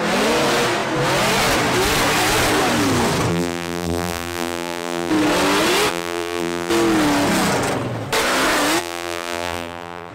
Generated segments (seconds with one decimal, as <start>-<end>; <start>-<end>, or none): 3.3-5.1; 5.9-6.7; 8.8-10.1